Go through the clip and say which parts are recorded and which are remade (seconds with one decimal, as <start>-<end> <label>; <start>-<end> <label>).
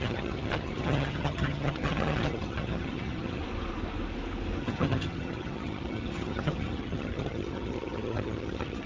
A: 0.0-3.4 remade; 3.4-4.6 recorded; 4.6-8.9 remade